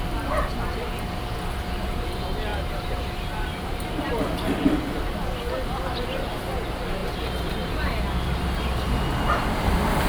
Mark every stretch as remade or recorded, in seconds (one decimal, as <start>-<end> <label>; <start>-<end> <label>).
0.0-2.5 recorded; 2.5-4.1 remade; 4.1-7.0 recorded; 7.0-8.0 remade; 8.0-10.1 recorded